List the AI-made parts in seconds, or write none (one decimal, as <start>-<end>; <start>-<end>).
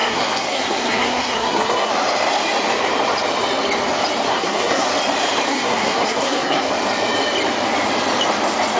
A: 0.0-1.9; 4.3-4.9; 5.5-6.7